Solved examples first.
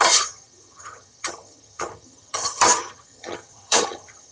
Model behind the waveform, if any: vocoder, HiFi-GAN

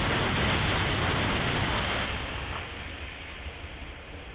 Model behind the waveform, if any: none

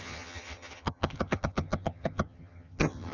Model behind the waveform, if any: vocoder, HiFi-GAN